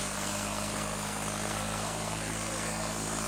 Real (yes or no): no